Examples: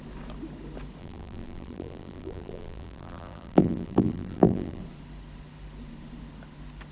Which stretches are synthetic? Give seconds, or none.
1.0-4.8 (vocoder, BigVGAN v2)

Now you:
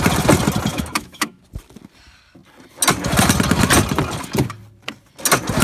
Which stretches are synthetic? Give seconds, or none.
0.7-1.4 (autoencoder, DAC-VAE)

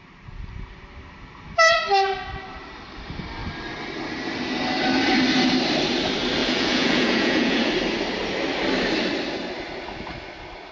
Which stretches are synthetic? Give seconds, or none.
6.4-7.7 (vocoder, Vocos)

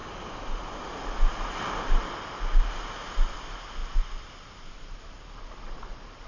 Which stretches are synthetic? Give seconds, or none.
none

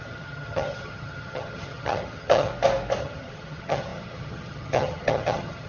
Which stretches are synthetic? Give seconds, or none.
0.0-2.5 (vocoder, HiFi-GAN); 3.0-5.7

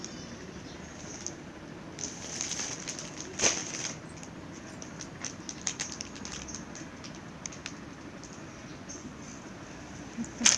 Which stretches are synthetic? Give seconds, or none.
8.7-9.3 (vocoder, Vocos)